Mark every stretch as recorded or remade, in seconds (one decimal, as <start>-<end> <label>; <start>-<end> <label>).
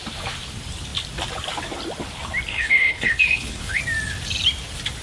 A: 0.0-2.5 recorded; 2.5-3.8 remade; 3.8-5.0 recorded